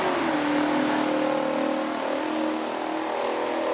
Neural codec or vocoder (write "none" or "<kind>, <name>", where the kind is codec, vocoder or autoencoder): none